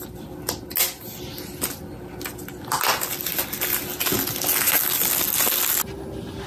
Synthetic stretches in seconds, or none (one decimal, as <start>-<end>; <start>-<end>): none